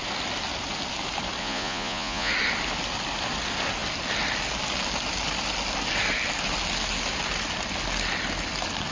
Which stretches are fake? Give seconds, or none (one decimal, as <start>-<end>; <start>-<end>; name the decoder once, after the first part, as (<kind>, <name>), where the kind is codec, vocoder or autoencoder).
1.4-2.3 (vocoder, Vocos)